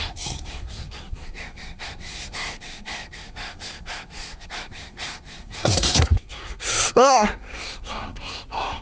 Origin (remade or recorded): remade